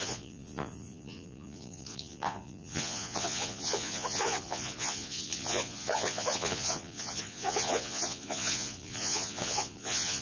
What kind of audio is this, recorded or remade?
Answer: remade